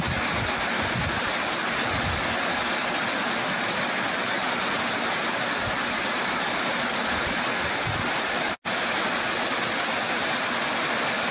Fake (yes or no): no